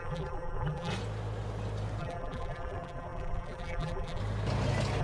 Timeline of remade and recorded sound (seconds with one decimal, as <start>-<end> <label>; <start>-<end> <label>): 0.0-0.9 remade; 0.9-2.0 recorded; 2.0-4.2 remade; 4.2-5.0 recorded